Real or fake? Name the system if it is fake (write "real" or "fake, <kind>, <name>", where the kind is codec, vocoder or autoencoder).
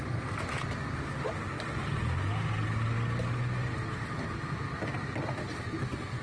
real